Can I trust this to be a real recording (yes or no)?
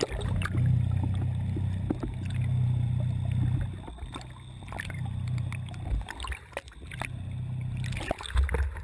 yes